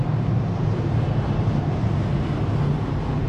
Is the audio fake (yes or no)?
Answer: yes